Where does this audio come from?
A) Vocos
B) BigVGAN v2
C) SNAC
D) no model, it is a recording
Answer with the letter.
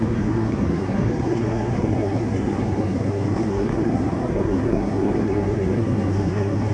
C